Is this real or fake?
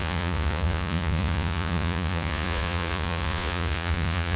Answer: fake